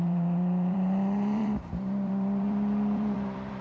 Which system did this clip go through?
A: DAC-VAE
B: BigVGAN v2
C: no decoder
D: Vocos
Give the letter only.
B